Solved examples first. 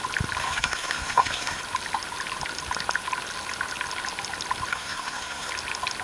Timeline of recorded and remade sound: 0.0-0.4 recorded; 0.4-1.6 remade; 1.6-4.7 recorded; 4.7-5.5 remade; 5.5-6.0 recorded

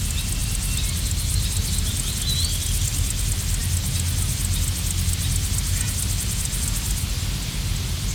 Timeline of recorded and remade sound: 0.0-8.1 recorded

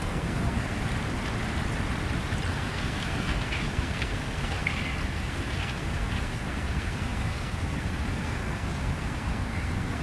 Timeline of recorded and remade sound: 0.0-0.8 remade; 0.8-2.5 recorded; 2.5-10.0 remade

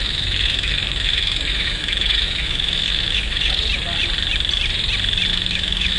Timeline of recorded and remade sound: 0.0-3.6 remade; 3.6-5.3 recorded; 5.3-6.0 remade

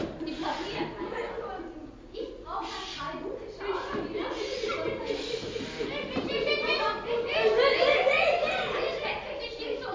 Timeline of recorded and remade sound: 0.0-9.9 recorded

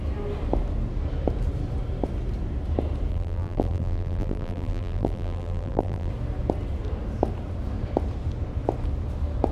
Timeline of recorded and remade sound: 0.0-3.1 recorded; 3.1-6.1 remade; 6.1-9.5 recorded

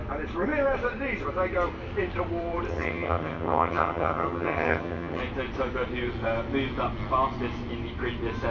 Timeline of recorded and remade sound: 0.0-2.7 recorded; 2.7-5.2 remade; 5.2-8.5 recorded

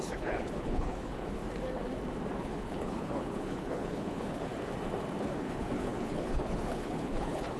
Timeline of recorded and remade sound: 0.0-1.4 remade; 1.4-2.4 recorded; 2.4-4.5 remade; 4.5-5.2 recorded; 5.2-7.6 remade